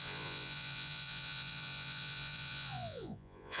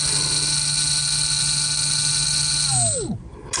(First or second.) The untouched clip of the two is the second